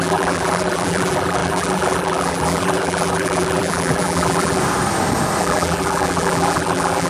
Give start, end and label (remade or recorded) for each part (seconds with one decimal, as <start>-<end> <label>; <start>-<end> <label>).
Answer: 0.0-4.6 remade; 4.6-5.4 recorded; 5.4-7.1 remade